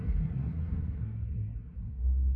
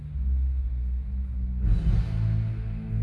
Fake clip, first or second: first